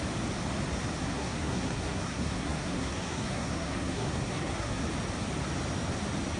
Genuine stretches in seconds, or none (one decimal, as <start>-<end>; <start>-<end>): 0.0-1.0; 4.8-6.4